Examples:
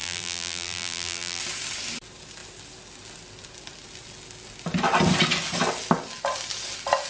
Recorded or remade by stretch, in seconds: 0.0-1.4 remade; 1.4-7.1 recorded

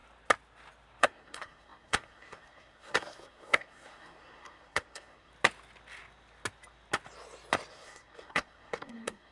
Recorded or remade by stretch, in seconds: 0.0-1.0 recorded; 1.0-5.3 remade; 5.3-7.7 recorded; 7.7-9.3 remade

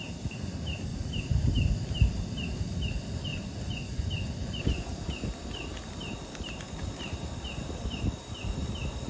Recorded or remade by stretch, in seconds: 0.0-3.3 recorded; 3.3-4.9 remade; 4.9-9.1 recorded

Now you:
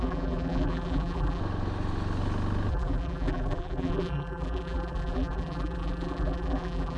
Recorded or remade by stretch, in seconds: 0.0-1.4 remade; 1.4-2.7 recorded; 2.7-7.0 remade

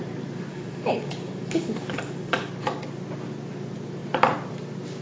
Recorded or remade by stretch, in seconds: 0.0-0.5 recorded; 0.5-2.5 remade; 2.5-5.0 recorded